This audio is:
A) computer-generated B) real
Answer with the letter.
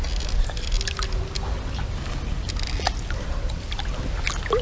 B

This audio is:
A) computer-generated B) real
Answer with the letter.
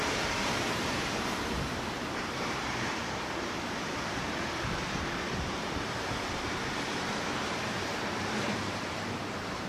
A